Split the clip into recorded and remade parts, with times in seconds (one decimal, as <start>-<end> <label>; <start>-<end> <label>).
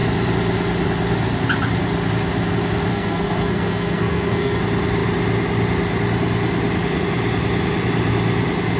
0.0-2.9 recorded; 2.9-4.6 remade; 4.6-8.8 recorded